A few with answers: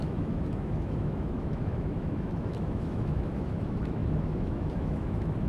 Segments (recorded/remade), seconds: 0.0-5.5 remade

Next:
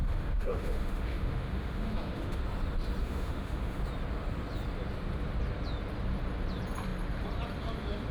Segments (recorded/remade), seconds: 0.0-2.4 remade; 2.4-3.0 recorded; 3.0-3.8 remade; 3.8-8.1 recorded

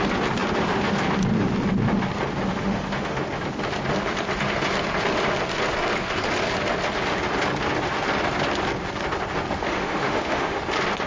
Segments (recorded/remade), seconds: 0.0-2.5 recorded; 2.5-3.2 remade; 3.2-9.6 recorded; 9.6-10.6 remade; 10.6-11.1 recorded